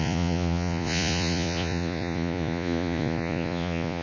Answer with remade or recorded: remade